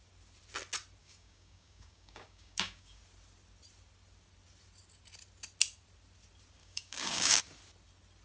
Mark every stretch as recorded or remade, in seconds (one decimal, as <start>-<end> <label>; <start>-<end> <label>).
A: 0.0-1.0 recorded; 1.0-3.0 remade; 3.0-6.6 recorded; 6.6-7.4 remade; 7.4-8.2 recorded